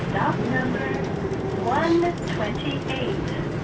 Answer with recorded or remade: remade